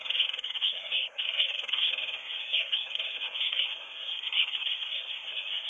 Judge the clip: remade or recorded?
remade